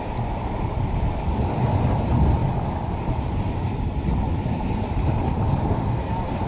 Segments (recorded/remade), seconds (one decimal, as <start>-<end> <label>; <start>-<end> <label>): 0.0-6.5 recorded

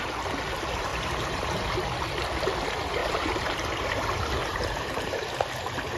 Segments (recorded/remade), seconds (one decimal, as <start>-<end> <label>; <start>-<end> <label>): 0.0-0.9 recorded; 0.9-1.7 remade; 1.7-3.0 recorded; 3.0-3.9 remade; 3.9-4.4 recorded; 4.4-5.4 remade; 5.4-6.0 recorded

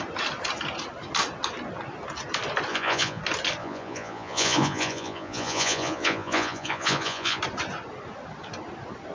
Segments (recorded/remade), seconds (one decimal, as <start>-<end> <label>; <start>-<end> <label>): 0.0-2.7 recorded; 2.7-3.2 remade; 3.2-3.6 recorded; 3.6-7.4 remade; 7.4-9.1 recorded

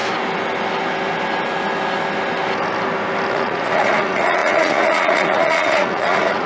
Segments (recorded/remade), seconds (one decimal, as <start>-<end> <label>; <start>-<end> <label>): 0.0-3.3 recorded; 3.3-6.5 remade